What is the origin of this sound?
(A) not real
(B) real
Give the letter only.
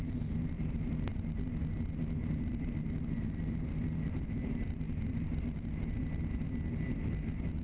B